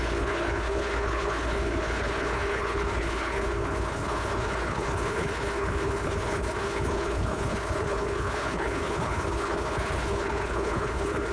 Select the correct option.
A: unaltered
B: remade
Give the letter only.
B